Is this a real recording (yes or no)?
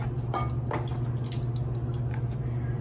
yes